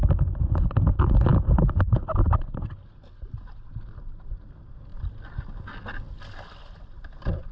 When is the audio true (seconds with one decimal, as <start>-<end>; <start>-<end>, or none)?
0.0-7.5